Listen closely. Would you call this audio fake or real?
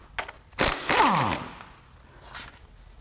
real